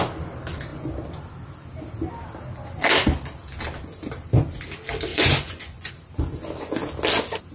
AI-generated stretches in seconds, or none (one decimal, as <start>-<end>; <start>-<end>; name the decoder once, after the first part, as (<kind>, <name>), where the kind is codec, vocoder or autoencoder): 5.1-5.9 (vocoder, Vocos)